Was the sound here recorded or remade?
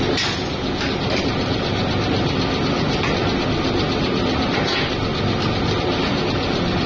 recorded